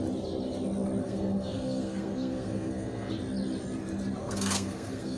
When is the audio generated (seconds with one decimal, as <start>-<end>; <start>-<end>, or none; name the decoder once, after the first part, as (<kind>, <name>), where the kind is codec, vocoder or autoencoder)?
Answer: 1.0-3.1 (codec, SNAC); 4.2-5.2